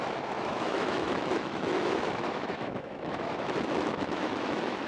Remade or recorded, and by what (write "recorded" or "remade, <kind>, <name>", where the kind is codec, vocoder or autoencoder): remade, autoencoder, DAC-VAE